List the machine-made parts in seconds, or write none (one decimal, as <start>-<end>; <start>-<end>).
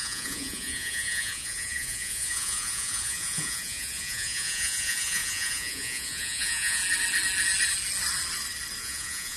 0.0-6.8; 8.8-9.4